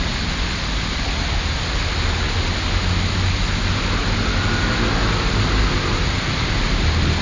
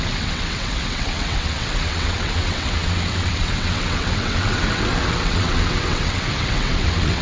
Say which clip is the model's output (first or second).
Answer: second